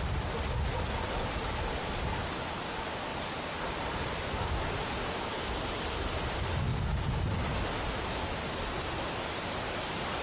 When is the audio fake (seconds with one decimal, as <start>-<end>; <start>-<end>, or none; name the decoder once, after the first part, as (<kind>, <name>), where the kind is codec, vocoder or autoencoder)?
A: 1.4-2.1 (vocoder, BigVGAN v2); 3.1-5.3